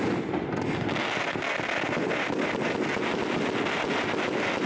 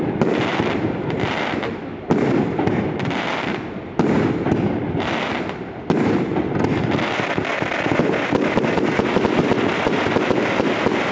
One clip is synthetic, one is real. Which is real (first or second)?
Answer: first